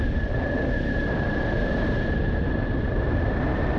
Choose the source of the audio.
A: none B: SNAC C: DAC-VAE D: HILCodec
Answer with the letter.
A